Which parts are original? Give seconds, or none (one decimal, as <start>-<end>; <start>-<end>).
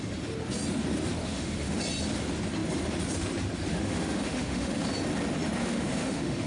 0.0-1.2; 1.8-3.7; 4.8-5.6